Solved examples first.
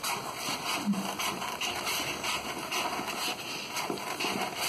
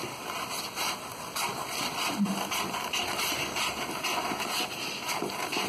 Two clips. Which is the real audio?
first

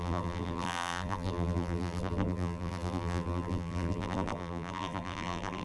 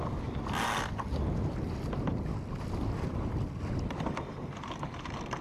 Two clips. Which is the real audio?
second